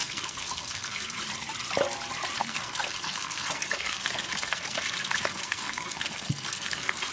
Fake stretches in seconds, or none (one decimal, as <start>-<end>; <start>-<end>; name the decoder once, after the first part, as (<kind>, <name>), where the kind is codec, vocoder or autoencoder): 0.0-1.2 (codec, SNAC); 2.4-7.1